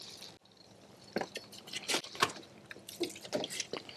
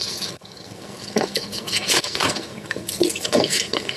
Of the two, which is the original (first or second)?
first